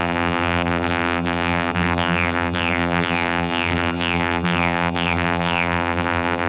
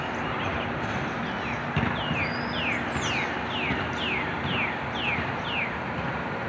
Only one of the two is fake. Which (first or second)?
first